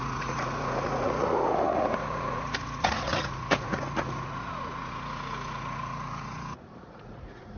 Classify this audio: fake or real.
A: fake